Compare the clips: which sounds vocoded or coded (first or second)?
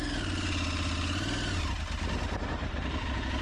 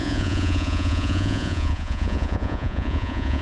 second